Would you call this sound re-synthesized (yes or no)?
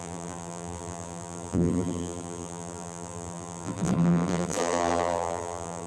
yes